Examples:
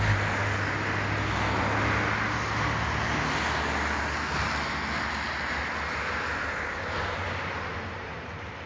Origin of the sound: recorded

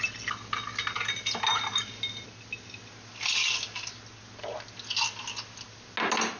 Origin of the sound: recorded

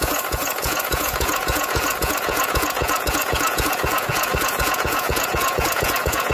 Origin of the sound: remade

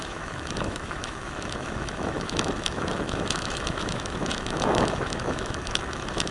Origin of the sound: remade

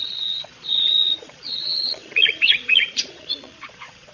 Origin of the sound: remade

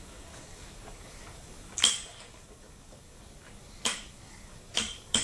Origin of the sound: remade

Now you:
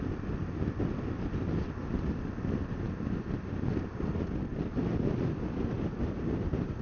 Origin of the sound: recorded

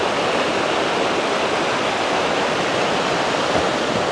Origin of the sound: remade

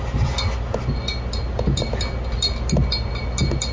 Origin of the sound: recorded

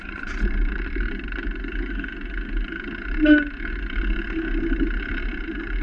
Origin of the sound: recorded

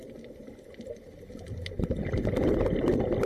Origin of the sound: remade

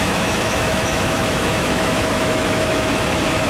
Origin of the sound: remade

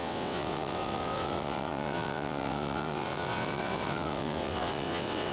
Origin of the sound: remade